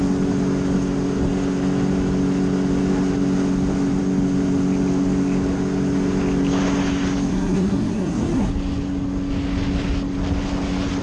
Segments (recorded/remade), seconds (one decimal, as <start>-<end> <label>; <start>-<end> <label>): 0.0-7.3 recorded; 7.3-8.5 remade; 8.5-11.0 recorded

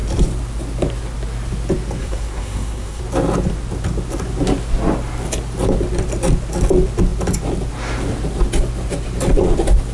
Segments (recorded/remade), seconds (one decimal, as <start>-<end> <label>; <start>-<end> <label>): 0.0-2.0 recorded; 2.0-3.0 remade; 3.0-9.9 recorded

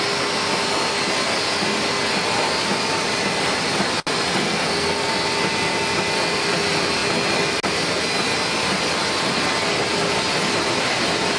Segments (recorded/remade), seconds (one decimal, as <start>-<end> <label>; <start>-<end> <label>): 0.0-4.4 recorded; 4.4-5.1 remade; 5.1-11.4 recorded